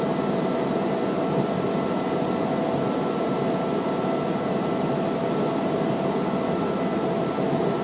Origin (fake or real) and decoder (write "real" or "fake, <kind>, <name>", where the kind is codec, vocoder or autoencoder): real